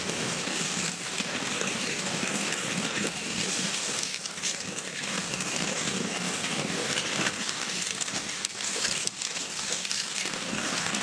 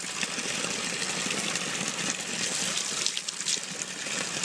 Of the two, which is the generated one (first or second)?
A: first